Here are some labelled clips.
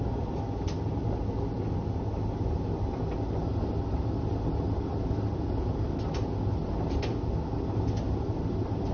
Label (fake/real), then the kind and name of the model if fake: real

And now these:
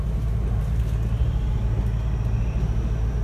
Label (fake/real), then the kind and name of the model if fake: real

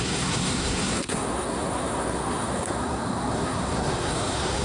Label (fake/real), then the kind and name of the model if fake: fake, codec, SNAC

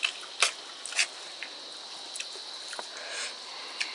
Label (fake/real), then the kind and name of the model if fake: real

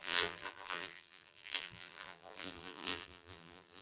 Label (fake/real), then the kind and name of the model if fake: fake, vocoder, BigVGAN v2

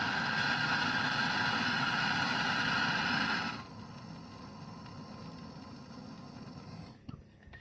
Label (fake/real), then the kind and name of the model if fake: real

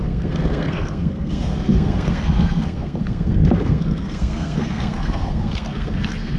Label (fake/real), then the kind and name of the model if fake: fake, codec, SNAC